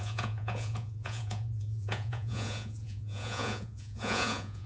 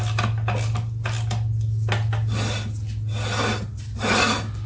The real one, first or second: second